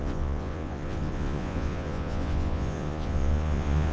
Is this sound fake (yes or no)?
yes